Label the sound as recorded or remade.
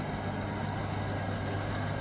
recorded